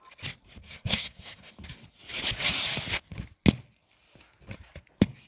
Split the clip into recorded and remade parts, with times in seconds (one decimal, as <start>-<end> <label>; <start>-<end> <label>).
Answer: 0.0-0.6 recorded; 0.6-1.5 remade; 1.5-5.3 recorded